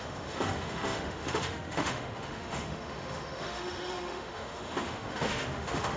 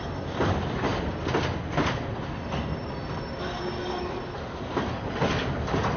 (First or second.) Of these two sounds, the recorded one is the second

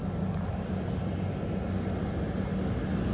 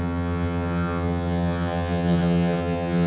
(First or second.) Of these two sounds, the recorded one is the first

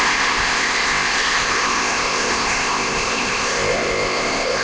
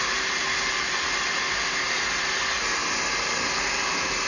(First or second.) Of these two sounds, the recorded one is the second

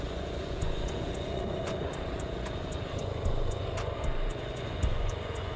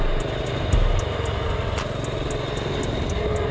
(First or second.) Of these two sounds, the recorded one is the second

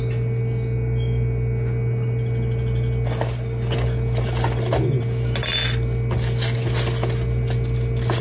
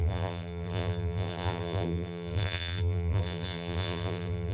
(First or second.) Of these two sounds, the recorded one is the first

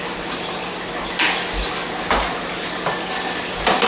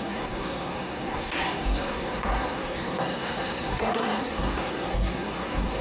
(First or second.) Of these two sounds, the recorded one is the first